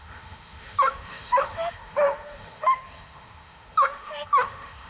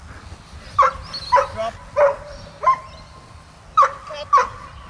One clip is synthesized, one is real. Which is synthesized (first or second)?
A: first